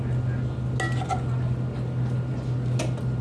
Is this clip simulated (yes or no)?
no